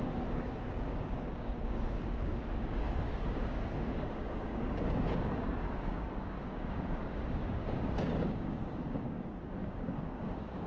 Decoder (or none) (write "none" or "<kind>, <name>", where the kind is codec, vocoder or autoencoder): codec, DAC